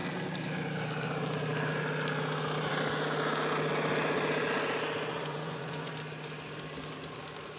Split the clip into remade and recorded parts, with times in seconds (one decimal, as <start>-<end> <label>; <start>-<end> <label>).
0.0-5.1 recorded; 5.1-5.9 remade; 5.9-7.6 recorded